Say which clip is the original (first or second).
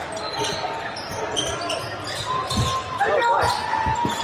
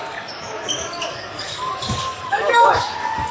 first